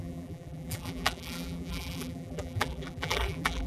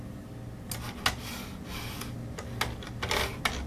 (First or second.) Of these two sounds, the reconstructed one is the first